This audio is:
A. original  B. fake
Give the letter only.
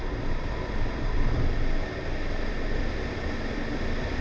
B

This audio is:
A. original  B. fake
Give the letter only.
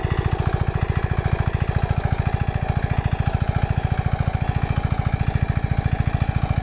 A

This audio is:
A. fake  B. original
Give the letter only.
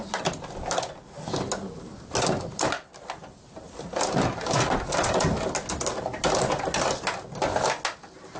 B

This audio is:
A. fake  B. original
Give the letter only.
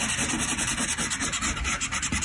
B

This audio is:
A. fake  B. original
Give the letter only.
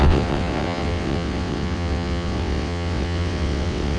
A